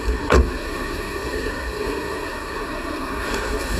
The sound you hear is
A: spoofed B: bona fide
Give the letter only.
A